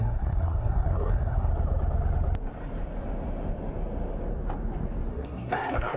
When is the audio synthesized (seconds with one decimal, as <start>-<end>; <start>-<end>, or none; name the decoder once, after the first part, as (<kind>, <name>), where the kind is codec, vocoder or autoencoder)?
0.0-1.5 (codec, SNAC); 5.1-6.0